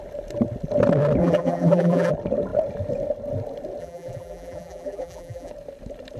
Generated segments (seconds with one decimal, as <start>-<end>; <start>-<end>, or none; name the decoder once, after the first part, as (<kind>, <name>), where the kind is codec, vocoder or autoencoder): 1.2-2.1 (vocoder, BigVGAN v2); 3.8-5.5